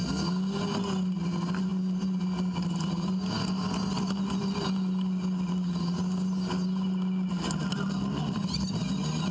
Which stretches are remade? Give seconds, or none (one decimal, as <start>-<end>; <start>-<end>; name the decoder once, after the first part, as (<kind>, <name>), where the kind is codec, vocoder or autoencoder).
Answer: none